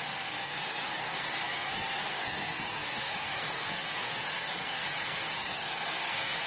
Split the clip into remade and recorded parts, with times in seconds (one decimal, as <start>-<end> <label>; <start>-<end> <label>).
0.0-6.5 remade